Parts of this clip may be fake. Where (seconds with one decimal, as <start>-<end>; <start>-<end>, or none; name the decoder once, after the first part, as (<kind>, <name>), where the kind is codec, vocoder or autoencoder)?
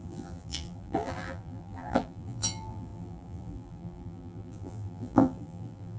0.0-6.0 (vocoder, BigVGAN v2)